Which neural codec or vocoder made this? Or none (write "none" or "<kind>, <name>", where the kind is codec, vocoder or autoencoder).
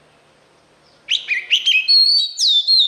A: none